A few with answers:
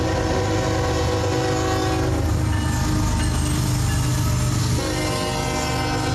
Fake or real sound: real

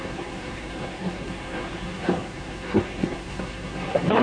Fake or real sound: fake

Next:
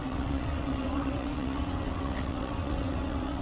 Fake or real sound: fake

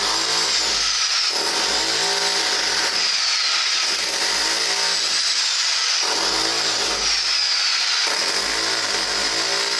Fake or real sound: real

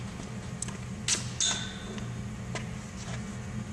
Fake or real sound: real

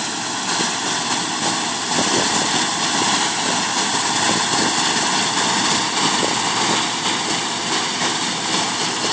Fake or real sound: real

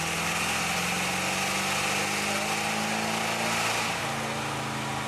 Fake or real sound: real